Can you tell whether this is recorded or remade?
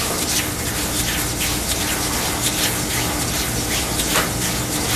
recorded